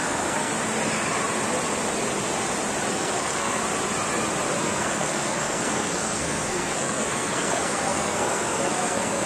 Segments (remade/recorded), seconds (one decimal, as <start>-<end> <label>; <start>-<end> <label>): 0.0-0.5 remade; 0.5-2.9 recorded; 2.9-3.6 remade; 3.6-4.6 recorded; 4.6-9.3 remade